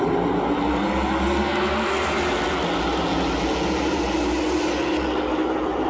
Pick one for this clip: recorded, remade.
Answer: recorded